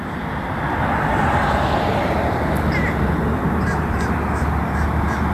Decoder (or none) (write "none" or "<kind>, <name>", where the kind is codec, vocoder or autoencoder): none